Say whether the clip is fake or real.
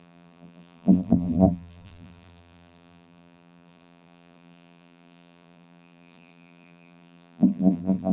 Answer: fake